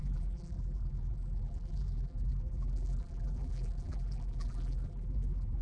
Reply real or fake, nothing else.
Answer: fake